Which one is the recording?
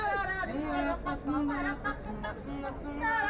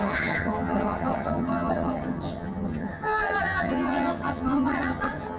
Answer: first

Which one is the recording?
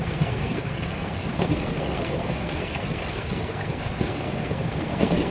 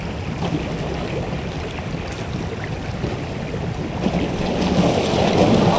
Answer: second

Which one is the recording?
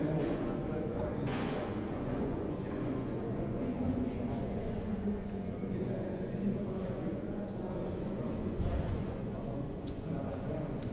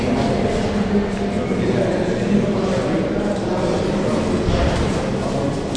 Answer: second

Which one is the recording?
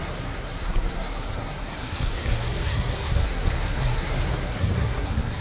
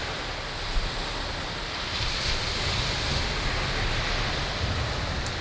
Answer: second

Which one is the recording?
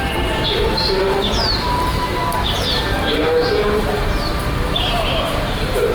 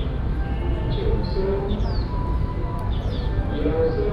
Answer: second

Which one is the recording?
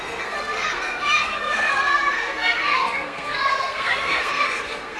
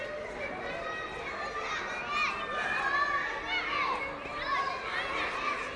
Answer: second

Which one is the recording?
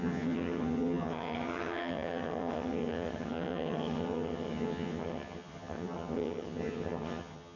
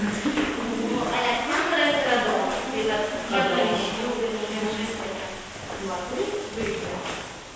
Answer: second